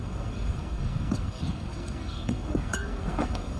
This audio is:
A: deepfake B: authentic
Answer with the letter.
A